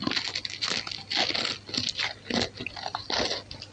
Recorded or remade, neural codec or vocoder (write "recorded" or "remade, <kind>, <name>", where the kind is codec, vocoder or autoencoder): recorded